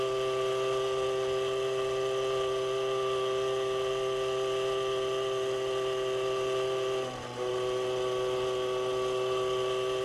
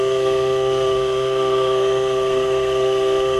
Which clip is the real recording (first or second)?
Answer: first